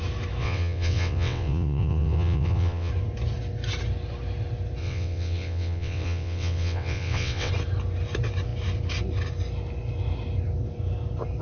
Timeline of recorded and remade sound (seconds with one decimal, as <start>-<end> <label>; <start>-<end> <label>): 0.0-0.4 recorded; 0.4-2.9 remade; 2.9-4.8 recorded; 4.8-7.5 remade; 7.5-11.4 recorded